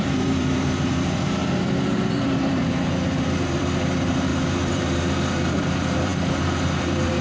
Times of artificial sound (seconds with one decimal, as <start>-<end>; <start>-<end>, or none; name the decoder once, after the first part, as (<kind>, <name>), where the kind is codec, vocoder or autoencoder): 0.0-1.4 (vocoder, BigVGAN v2); 2.1-7.2